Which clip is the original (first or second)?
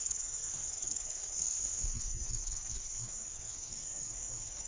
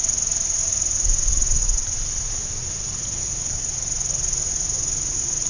second